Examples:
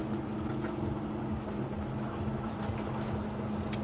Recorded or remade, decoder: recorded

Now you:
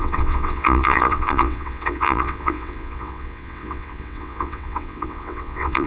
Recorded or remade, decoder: remade, vocoder, WaveNeXt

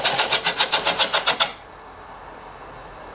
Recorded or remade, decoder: recorded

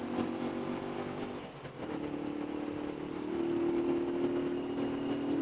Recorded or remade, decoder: recorded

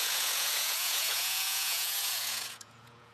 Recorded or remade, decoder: remade, vocoder, Vocos